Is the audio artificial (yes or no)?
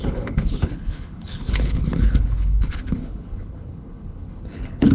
yes